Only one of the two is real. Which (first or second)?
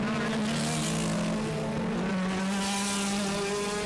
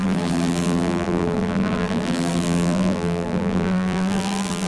first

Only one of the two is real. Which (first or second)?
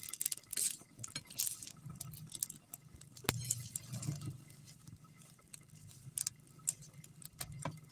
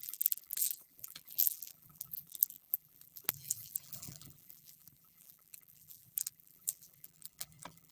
first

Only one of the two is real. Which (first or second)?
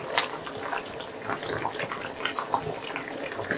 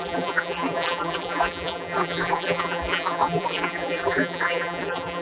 first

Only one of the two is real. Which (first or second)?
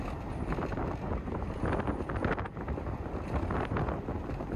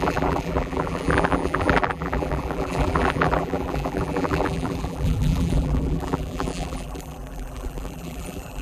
first